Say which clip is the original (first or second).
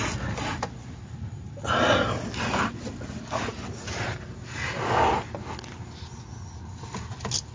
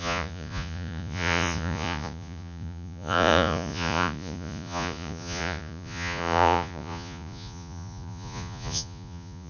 first